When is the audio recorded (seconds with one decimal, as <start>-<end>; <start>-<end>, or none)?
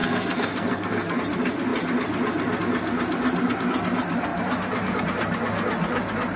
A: 1.2-6.4